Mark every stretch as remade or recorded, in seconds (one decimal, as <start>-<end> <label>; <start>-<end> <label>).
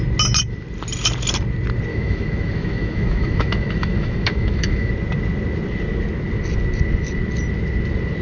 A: 0.0-1.9 recorded; 1.9-4.9 remade; 4.9-8.2 recorded